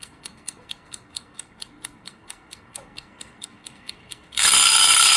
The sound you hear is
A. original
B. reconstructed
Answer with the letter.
B